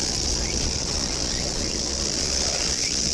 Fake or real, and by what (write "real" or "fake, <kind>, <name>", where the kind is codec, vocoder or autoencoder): fake, vocoder, Vocos